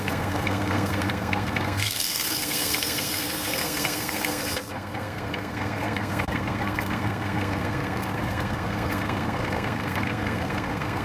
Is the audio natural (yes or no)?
no